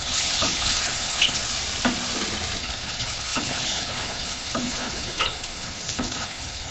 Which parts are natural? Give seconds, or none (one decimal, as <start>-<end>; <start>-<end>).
1.4-2.6